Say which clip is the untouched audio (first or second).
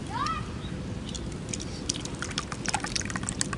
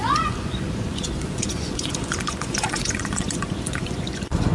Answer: first